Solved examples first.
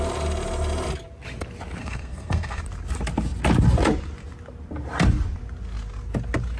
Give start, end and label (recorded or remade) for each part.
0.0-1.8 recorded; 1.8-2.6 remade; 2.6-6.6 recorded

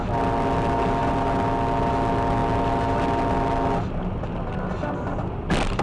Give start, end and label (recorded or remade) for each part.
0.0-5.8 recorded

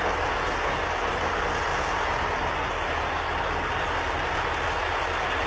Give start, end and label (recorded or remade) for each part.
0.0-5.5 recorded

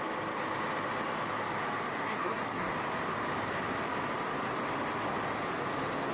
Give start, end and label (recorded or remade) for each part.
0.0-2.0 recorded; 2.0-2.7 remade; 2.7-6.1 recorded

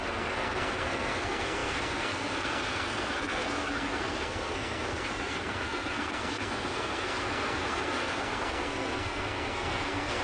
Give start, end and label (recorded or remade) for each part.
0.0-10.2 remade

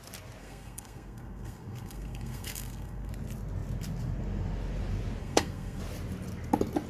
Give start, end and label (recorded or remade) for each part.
0.0-0.4 recorded; 0.4-3.1 remade; 3.1-5.2 recorded; 5.2-5.8 remade; 5.8-6.9 recorded

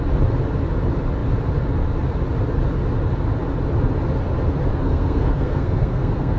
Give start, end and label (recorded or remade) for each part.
0.0-4.7 recorded; 4.7-6.4 remade